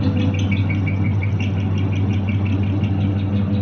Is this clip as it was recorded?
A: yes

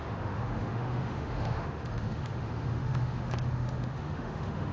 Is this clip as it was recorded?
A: no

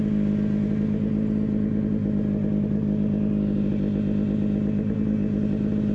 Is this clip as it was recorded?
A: yes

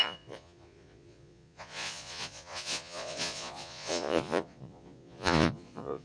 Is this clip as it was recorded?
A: no